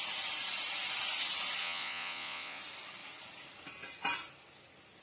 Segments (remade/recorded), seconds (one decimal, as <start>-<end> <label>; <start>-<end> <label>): 0.0-1.6 recorded; 1.6-2.6 remade; 2.6-5.0 recorded